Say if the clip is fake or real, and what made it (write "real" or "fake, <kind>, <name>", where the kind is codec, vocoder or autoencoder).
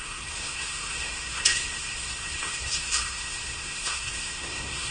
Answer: fake, codec, SNAC